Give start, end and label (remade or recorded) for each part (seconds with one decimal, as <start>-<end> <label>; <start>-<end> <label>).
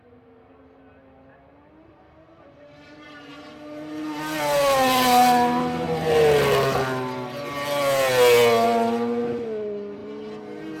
0.0-10.8 recorded